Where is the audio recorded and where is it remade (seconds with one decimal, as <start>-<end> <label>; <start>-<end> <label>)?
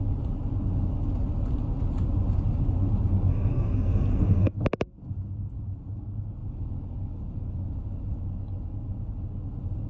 0.0-3.3 recorded; 3.3-4.5 remade; 4.5-9.9 recorded